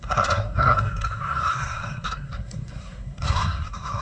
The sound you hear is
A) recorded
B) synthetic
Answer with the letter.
B